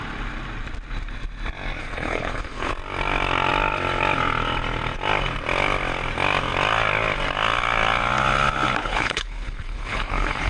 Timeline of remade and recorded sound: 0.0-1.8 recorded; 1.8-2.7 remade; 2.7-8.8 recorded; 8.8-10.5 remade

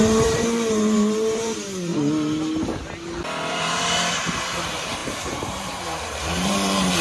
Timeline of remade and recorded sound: 0.0-1.9 remade; 1.9-3.5 recorded; 3.5-7.0 remade

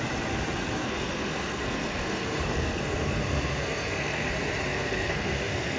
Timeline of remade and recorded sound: 0.0-0.8 recorded; 0.8-4.3 remade; 4.3-4.7 recorded; 4.7-5.8 remade

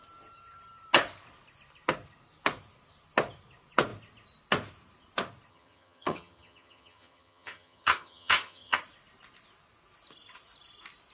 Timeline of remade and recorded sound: 0.0-5.5 recorded; 5.5-8.8 remade; 8.8-11.1 recorded

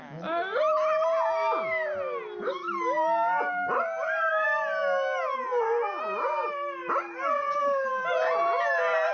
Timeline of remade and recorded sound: 0.0-9.1 recorded

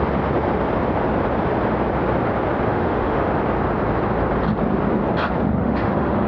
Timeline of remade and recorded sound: 0.0-2.7 recorded; 2.7-3.3 remade; 3.3-5.6 recorded; 5.6-6.3 remade